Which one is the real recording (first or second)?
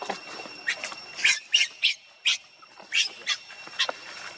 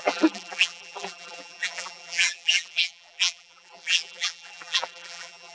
first